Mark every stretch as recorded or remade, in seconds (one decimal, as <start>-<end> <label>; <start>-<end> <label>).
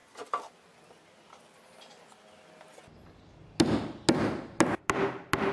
0.0-5.5 recorded